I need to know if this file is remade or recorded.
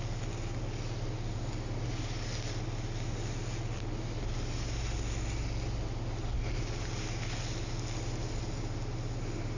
recorded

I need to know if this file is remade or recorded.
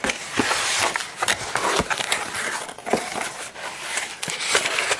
recorded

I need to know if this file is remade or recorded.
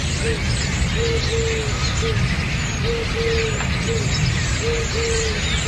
recorded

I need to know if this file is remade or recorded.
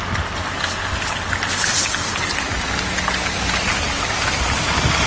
recorded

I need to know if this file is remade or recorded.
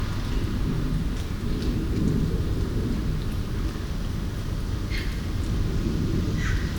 recorded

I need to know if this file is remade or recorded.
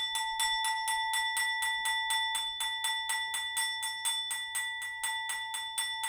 recorded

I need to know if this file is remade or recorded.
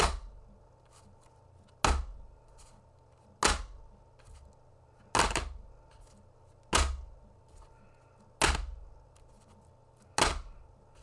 recorded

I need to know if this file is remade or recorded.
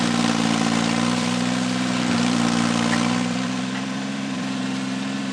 remade